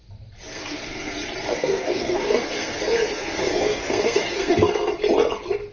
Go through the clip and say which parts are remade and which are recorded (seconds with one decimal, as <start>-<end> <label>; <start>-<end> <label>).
0.0-0.5 recorded; 0.5-1.1 remade; 1.1-1.5 recorded; 1.5-4.9 remade; 4.9-5.7 recorded